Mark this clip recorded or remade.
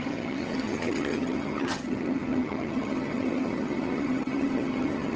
remade